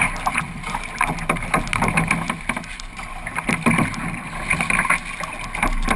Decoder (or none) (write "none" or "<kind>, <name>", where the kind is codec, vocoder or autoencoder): none